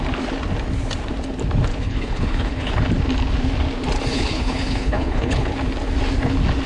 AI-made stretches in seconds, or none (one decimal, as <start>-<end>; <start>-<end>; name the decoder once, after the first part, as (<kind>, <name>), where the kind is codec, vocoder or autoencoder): 1.7-2.7 (codec, HILCodec); 4.1-5.5